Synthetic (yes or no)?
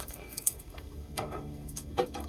yes